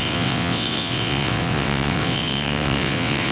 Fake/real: fake